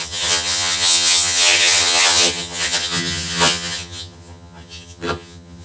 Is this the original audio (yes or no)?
no